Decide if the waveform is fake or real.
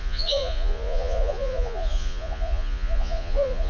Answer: fake